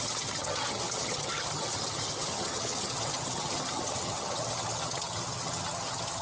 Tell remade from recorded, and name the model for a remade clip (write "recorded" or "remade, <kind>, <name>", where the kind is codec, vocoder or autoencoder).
remade, vocoder, HiFi-GAN